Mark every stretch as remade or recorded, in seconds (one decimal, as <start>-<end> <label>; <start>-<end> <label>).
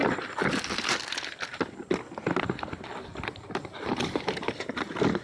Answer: 0.0-5.2 recorded